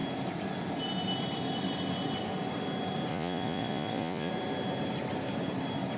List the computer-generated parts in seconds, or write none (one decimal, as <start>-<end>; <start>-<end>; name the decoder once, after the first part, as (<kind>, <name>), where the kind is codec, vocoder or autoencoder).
3.1-4.3 (vocoder, Vocos)